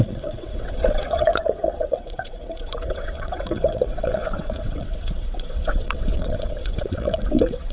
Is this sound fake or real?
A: fake